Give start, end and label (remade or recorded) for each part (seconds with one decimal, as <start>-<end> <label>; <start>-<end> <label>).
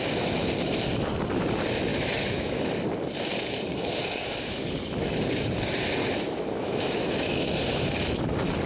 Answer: 0.0-1.9 recorded; 1.9-2.7 remade; 2.7-6.5 recorded; 6.5-7.5 remade; 7.5-8.7 recorded